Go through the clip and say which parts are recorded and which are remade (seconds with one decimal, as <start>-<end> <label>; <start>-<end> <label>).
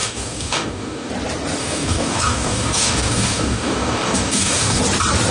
0.0-1.1 remade; 1.1-1.6 recorded; 1.6-4.8 remade; 4.8-5.3 recorded